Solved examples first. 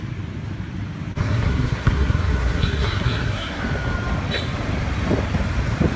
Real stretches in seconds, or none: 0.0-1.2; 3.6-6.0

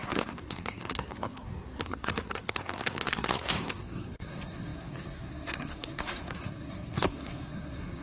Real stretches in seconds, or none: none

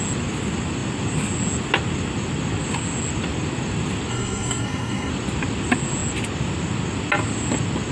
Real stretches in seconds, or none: 0.0-4.1; 5.1-7.9

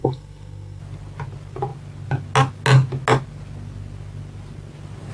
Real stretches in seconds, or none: 0.8-5.1

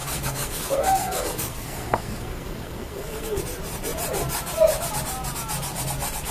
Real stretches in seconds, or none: 3.4-6.3

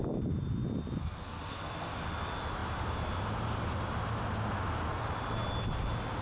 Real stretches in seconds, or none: 0.0-1.0; 1.9-6.2

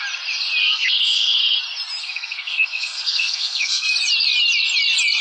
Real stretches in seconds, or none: 0.0-0.6; 1.4-2.0; 3.9-5.2

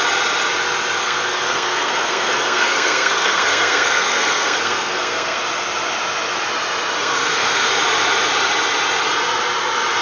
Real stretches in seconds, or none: 0.0-1.0; 5.4-7.0; 7.7-10.0